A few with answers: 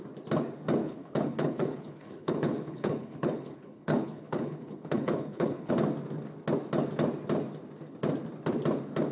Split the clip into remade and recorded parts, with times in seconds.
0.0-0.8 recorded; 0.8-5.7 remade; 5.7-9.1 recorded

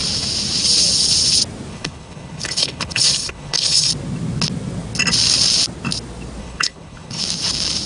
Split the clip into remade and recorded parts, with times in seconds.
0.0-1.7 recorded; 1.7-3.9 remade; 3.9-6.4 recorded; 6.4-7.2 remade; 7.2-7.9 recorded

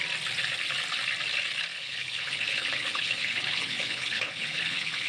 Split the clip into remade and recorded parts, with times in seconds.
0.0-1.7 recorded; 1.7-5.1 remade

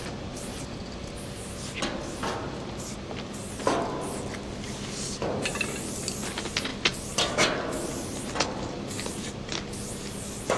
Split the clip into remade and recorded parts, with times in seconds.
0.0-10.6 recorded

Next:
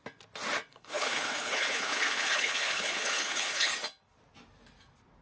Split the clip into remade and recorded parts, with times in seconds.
0.0-0.7 recorded; 0.7-3.7 remade; 3.7-5.2 recorded